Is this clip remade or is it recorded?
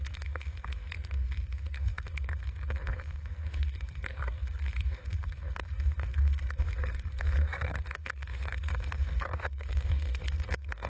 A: remade